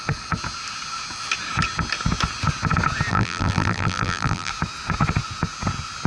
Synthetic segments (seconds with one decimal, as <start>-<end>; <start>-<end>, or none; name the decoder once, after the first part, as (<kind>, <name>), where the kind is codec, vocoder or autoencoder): 3.1-4.5 (vocoder, BigVGAN v2)